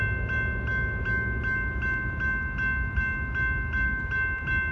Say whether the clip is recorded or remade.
recorded